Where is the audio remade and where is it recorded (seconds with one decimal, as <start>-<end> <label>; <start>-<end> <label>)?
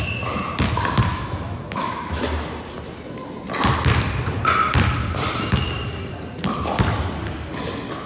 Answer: 0.0-1.1 recorded; 1.1-2.2 remade; 2.2-8.1 recorded